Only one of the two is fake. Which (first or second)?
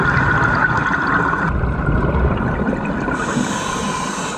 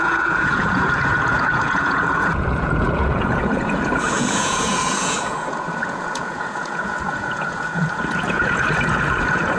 second